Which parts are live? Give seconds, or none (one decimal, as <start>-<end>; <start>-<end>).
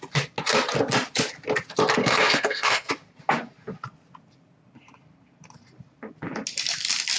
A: 0.0-2.0; 2.9-7.2